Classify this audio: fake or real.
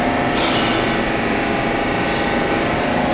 real